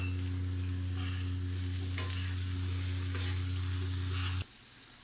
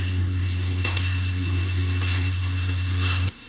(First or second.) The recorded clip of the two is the first